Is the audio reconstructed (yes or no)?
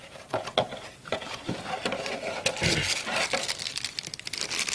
no